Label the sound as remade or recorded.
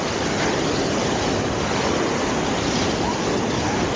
recorded